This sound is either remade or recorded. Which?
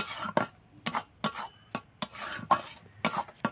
recorded